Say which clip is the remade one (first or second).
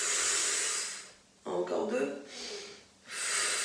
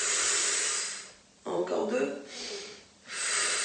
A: second